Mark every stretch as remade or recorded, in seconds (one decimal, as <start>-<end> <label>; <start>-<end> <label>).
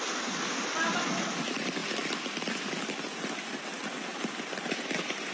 0.0-5.3 recorded